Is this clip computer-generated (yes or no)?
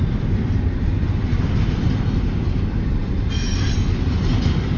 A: no